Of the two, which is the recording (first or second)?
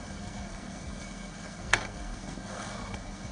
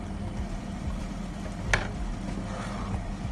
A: second